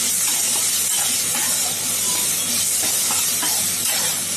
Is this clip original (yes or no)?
yes